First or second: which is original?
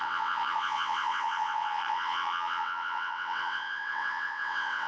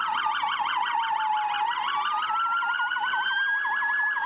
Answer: second